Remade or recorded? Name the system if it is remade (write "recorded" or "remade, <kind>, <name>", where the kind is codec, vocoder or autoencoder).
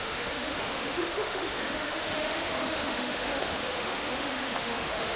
remade, autoencoder, DAC-VAE